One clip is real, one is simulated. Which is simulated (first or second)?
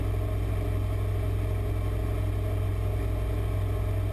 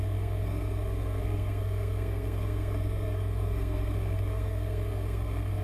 second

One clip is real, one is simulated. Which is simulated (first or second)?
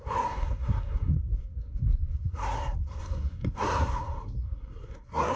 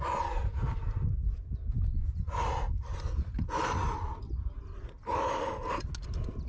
first